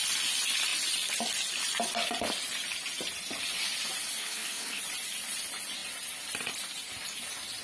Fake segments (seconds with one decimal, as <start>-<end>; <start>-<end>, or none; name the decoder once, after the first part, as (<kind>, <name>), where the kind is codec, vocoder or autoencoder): 4.2-4.8 (codec, HILCodec)